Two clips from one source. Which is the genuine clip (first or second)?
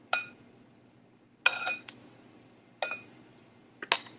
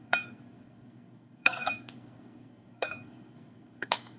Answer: first